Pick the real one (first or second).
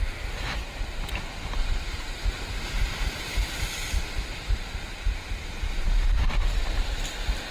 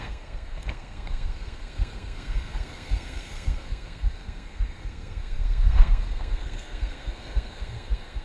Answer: first